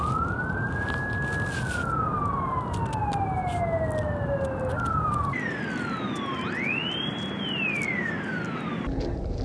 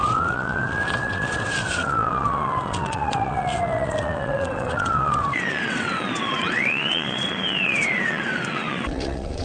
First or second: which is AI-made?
second